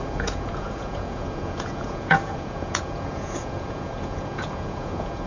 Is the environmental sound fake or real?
fake